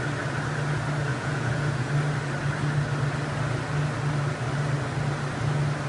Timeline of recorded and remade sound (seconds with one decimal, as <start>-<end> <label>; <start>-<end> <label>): 0.0-1.1 recorded; 1.1-1.9 remade; 1.9-5.9 recorded